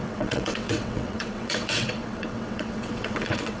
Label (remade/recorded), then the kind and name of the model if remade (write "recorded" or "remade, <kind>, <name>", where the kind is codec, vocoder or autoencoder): remade, vocoder, WaveNeXt